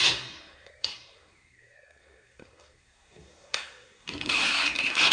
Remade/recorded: remade